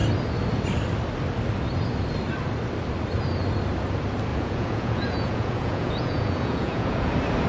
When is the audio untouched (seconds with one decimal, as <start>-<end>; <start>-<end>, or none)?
0.0-4.3; 7.1-7.5